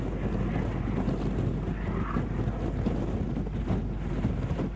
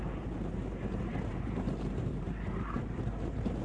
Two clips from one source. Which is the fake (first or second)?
second